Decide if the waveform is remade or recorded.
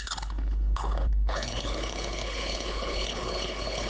remade